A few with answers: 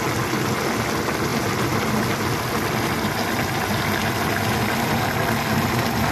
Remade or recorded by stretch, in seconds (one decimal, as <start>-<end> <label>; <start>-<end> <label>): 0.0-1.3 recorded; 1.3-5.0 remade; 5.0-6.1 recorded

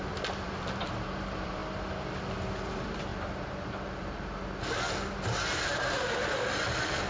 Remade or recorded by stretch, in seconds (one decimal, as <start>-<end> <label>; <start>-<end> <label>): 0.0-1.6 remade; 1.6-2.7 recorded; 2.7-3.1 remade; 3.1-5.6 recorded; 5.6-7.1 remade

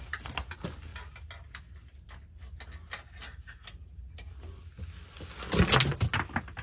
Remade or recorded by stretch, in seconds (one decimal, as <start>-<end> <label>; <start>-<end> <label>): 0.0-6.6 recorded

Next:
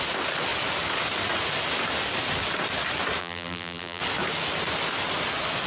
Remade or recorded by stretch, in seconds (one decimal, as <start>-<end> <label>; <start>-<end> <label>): 0.0-3.2 recorded; 3.2-4.0 remade; 4.0-5.7 recorded

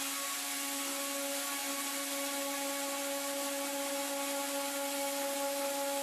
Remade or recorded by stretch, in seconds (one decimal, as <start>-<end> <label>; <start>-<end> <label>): 0.0-6.0 recorded

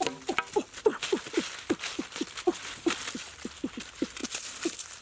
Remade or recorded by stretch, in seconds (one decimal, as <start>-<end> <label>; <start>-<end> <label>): 0.0-5.0 recorded